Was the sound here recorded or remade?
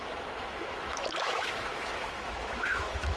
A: remade